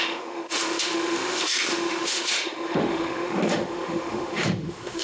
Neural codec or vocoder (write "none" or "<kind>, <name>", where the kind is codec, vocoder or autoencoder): autoencoder, DAC-VAE